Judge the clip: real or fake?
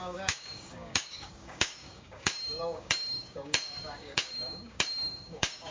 fake